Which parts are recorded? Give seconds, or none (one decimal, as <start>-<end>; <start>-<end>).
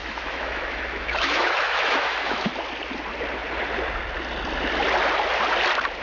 2.5-6.0